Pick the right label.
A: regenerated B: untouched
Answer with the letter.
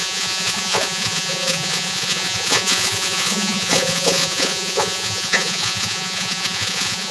A